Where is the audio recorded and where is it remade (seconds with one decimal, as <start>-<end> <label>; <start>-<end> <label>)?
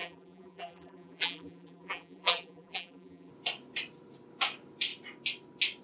0.0-3.3 remade; 3.3-5.8 recorded